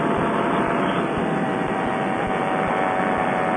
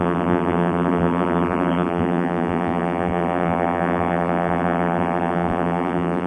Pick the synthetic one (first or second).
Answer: second